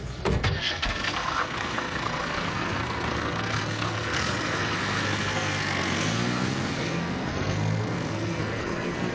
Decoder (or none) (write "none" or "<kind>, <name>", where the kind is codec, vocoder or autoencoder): codec, SNAC